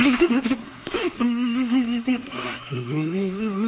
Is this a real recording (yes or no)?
no